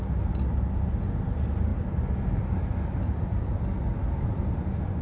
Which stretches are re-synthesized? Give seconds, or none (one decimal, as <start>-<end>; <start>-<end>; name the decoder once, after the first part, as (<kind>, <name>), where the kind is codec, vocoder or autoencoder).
none